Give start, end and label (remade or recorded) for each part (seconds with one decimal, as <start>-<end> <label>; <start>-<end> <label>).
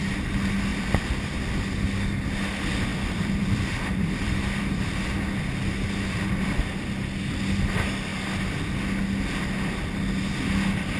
0.0-0.7 recorded; 0.7-1.4 remade; 1.4-2.9 recorded; 2.9-4.7 remade; 4.7-11.0 recorded